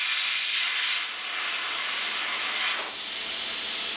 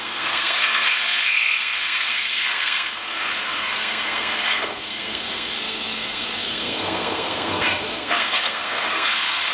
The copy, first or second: second